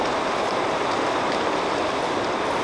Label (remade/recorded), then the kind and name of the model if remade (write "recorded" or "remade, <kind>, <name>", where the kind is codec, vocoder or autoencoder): recorded